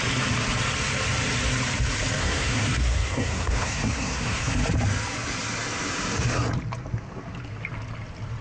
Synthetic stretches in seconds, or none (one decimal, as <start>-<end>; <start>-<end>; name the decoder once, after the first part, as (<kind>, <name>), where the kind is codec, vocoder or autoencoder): 2.2-4.5 (codec, SNAC)